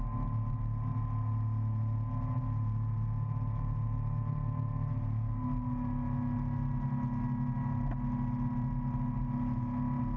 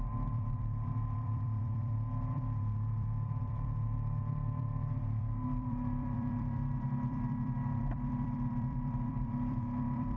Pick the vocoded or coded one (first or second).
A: second